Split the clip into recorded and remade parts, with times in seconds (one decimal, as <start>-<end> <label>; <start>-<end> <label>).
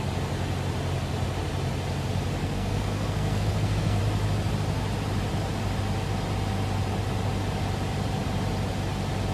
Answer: 0.0-2.4 recorded; 2.4-4.0 remade; 4.0-9.3 recorded